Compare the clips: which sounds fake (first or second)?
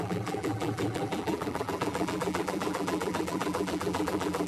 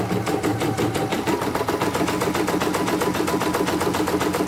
first